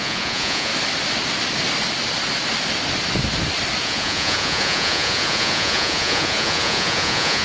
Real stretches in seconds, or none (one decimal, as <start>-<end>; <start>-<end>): 0.7-3.8